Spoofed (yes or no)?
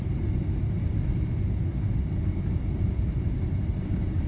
no